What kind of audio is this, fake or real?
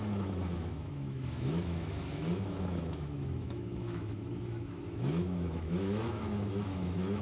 fake